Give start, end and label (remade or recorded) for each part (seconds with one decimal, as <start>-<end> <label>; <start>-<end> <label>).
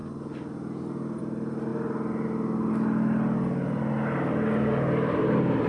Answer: 0.0-5.7 recorded